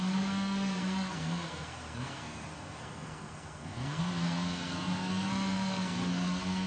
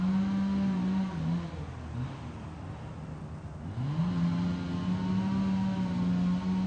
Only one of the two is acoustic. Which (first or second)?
second